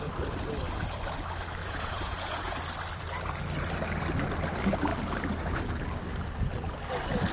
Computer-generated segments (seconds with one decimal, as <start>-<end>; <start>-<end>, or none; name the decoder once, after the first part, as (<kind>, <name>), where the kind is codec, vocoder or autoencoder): 1.6-2.6 (vocoder, Vocos)